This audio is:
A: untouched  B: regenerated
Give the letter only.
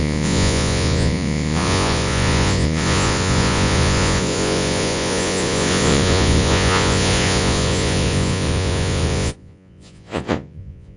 B